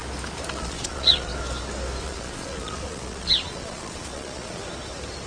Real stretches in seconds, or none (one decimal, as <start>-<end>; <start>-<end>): 0.0-0.5; 1.3-2.0; 4.6-5.3